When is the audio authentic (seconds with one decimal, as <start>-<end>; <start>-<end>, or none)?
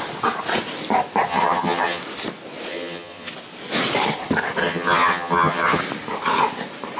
0.0-1.3; 2.0-2.7; 3.3-4.6; 5.8-7.0